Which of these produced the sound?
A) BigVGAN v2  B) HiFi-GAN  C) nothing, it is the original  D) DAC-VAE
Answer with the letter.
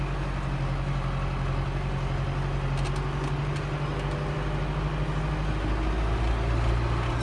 C